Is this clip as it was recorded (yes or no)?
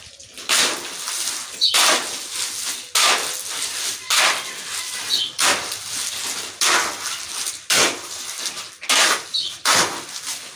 yes